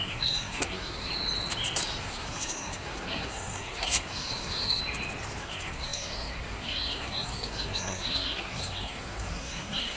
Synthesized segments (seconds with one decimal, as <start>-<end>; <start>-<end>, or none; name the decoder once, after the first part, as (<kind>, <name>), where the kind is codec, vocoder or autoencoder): 0.0-1.1 (codec, SNAC); 2.0-4.8; 5.4-10.0